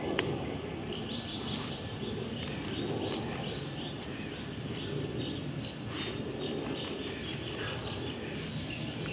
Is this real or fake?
real